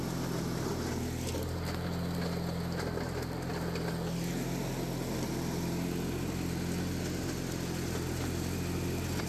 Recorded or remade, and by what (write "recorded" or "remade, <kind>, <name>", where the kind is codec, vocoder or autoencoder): recorded